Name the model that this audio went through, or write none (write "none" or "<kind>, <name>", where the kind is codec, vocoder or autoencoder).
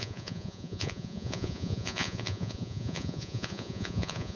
vocoder, Vocos